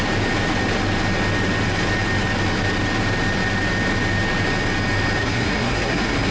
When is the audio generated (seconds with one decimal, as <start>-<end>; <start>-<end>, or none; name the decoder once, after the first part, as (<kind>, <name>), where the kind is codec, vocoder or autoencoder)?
5.2-6.3 (codec, SNAC)